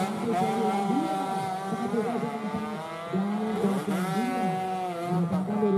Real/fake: real